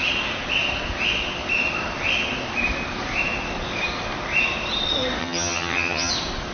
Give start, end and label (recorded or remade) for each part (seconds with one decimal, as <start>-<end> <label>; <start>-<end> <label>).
0.0-5.2 recorded; 5.2-6.1 remade; 6.1-6.5 recorded